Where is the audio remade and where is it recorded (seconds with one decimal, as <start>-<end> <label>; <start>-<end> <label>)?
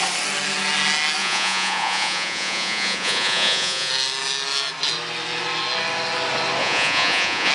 0.0-1.2 recorded; 1.2-3.9 remade; 3.9-6.6 recorded; 6.6-7.5 remade